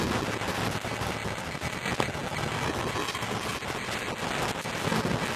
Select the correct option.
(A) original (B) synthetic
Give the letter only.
A